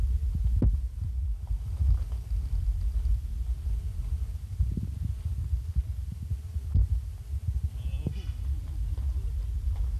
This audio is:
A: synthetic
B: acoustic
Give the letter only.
B